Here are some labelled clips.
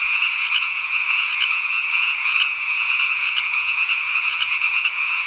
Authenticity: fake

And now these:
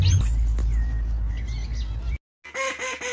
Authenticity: real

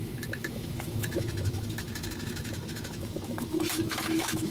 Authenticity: fake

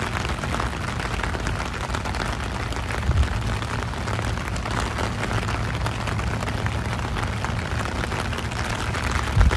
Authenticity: real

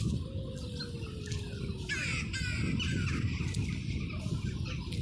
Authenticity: real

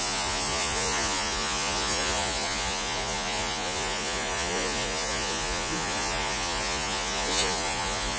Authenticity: fake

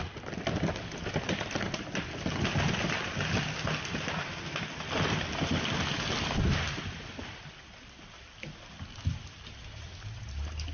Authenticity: real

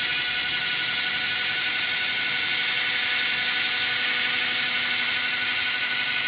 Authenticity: real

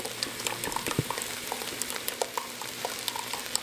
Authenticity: real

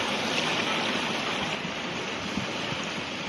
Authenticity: fake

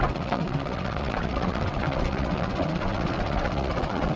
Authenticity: fake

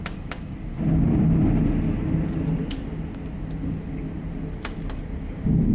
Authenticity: real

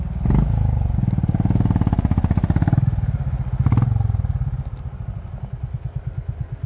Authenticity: real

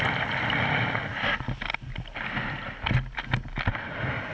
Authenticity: real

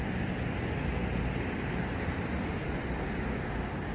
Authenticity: real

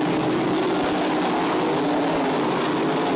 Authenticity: real